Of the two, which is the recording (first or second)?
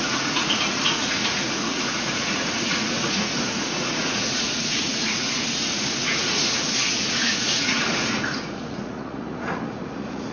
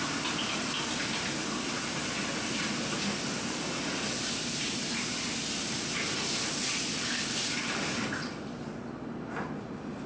second